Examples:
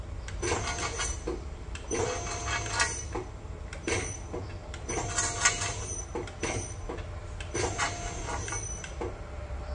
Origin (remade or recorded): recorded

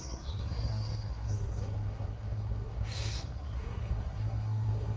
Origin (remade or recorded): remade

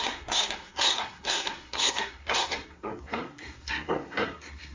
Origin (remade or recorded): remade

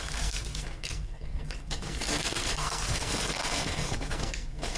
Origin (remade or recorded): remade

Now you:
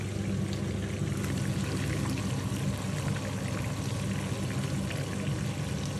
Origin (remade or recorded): recorded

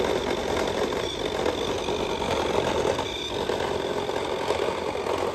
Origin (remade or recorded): recorded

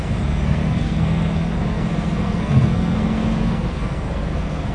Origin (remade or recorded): remade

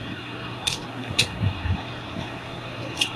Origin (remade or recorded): remade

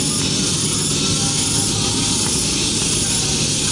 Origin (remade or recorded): recorded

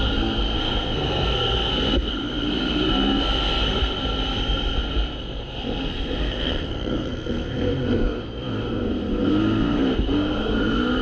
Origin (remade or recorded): remade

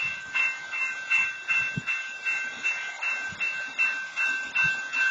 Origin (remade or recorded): recorded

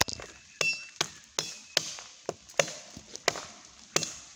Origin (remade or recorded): recorded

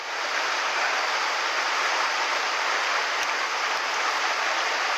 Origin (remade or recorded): recorded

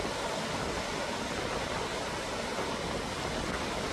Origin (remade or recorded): recorded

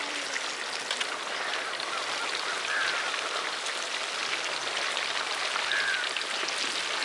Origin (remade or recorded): recorded